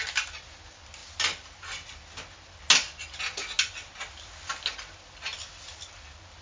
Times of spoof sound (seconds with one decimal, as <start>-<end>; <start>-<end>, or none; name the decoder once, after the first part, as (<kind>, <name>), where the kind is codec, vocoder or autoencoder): none